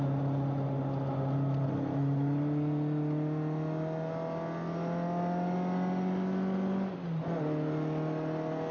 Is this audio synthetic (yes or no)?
no